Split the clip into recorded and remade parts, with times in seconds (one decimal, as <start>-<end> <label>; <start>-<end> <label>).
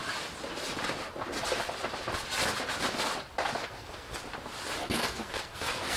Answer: 0.0-3.6 recorded; 3.6-4.2 remade; 4.2-4.8 recorded; 4.8-6.0 remade